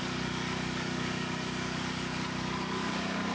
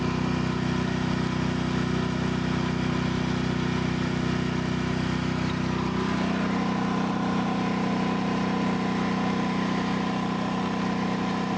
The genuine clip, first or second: second